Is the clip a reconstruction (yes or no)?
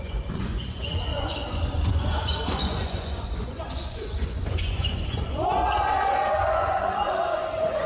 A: yes